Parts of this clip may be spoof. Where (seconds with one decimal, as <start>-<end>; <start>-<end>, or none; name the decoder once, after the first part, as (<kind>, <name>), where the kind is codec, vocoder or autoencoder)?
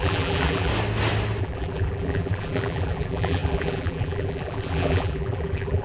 0.0-0.7 (vocoder, BigVGAN v2); 1.4-5.8